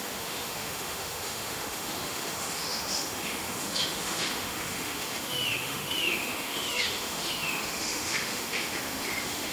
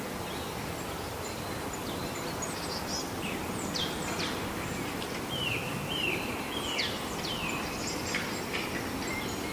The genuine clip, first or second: second